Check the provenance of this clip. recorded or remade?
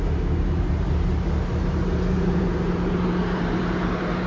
remade